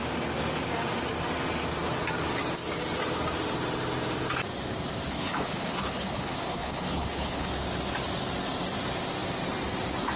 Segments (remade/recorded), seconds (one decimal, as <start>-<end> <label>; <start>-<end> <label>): 0.0-5.1 recorded; 5.1-7.5 remade; 7.5-10.2 recorded